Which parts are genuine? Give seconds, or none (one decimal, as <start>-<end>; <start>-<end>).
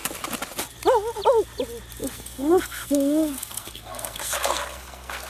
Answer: 0.0-2.0